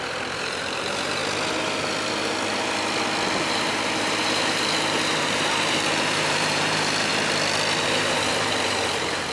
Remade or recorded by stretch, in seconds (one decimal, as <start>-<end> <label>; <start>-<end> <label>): 0.0-1.2 remade; 1.2-3.4 recorded; 3.4-7.1 remade; 7.1-7.8 recorded; 7.8-9.3 remade